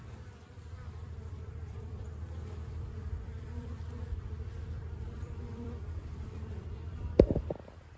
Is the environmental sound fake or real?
fake